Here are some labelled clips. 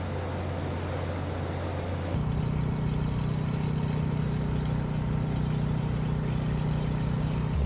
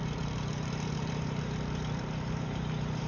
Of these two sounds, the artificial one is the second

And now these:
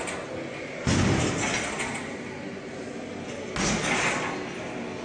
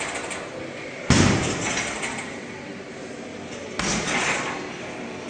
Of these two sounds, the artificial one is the second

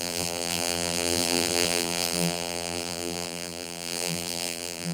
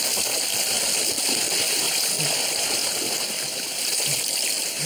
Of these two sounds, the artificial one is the first